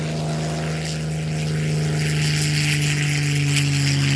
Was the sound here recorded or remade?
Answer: recorded